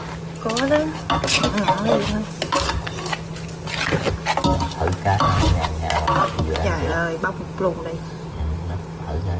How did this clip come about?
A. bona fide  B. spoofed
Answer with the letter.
A